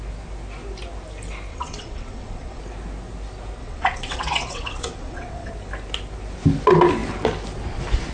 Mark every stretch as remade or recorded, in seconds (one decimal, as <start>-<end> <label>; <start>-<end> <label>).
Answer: 0.0-1.5 recorded; 1.5-2.6 remade; 2.6-3.6 recorded; 3.6-5.5 remade; 5.5-8.1 recorded